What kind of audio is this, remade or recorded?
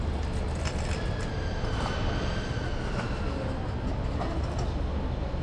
recorded